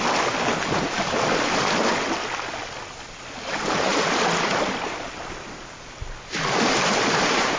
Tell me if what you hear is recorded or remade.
recorded